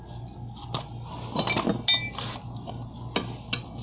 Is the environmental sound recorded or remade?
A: recorded